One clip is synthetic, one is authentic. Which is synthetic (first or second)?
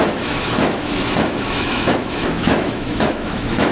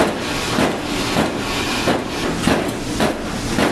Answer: first